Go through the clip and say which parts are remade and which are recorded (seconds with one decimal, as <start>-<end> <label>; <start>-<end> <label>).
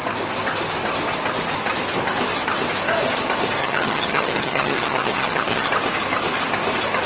0.0-3.6 recorded; 3.6-5.7 remade; 5.7-7.1 recorded